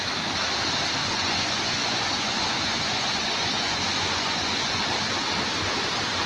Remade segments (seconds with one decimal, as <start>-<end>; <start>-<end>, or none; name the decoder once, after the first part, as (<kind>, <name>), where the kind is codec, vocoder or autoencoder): 1.0-4.8 (vocoder, Vocos)